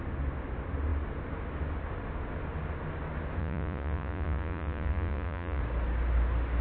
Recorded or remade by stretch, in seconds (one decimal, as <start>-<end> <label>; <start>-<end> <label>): 0.0-3.4 recorded; 3.4-5.6 remade; 5.6-6.6 recorded